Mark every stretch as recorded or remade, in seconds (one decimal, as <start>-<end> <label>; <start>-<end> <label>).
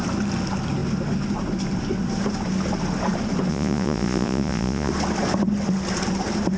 0.0-3.5 recorded; 3.5-4.9 remade; 4.9-6.6 recorded